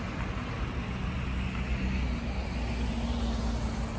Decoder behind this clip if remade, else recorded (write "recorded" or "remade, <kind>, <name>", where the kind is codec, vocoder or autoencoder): recorded